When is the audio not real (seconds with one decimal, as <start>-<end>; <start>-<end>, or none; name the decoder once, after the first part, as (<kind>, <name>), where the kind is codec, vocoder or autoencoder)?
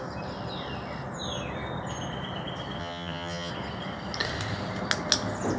2.8-3.5 (vocoder, HiFi-GAN)